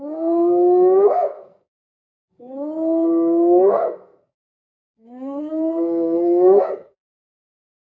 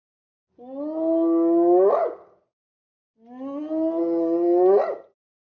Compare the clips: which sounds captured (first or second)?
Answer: second